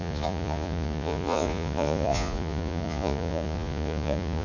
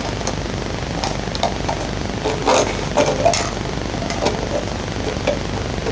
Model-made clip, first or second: first